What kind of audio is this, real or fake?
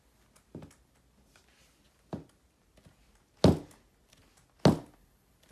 real